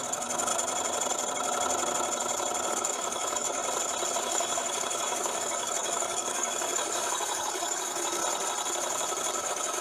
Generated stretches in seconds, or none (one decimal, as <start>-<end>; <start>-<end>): 0.0-0.5; 2.7-3.6; 4.2-8.2; 9.4-9.8